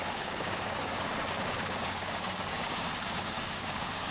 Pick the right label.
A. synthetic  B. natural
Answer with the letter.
A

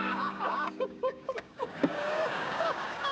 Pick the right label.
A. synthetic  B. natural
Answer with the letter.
A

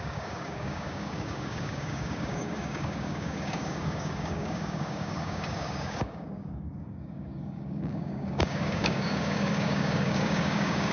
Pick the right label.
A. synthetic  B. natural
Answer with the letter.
A